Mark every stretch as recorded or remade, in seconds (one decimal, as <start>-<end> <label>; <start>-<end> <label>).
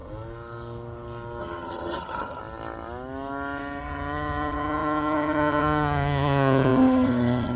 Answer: 0.0-1.4 recorded; 1.4-2.4 remade; 2.4-3.8 recorded; 3.8-7.6 remade